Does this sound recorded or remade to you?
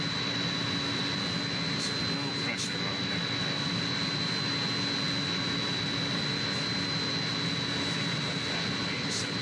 recorded